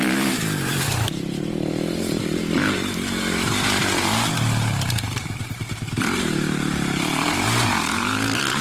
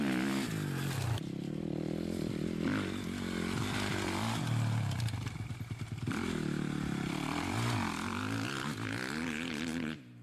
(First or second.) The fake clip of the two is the first